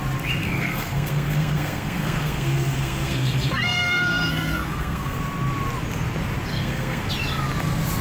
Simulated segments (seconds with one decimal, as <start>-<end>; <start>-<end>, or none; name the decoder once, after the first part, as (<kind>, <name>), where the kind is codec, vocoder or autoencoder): 0.4-5.2 (codec, SNAC); 6.5-7.1